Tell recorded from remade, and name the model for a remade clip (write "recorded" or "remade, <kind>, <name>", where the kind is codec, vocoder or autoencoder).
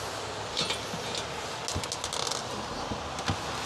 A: recorded